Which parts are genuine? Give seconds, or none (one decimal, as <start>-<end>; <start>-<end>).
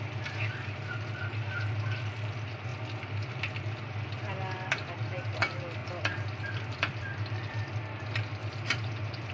0.0-5.8; 7.7-8.4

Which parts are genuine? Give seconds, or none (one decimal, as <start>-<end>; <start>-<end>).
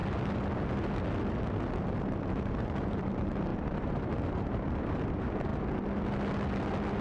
0.0-2.0; 5.5-7.0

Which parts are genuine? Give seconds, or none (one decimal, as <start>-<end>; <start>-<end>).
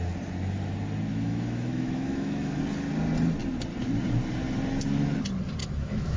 0.0-1.1; 2.6-5.6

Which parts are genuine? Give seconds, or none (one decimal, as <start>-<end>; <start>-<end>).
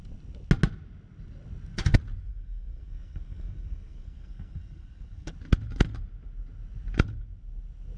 0.0-2.3; 5.3-8.0